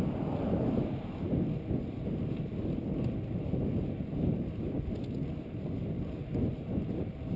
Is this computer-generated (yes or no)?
no